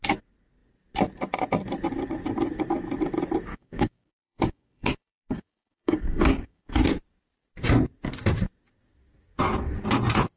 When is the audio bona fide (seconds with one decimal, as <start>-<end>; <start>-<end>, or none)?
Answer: 0.0-3.5; 6.7-10.4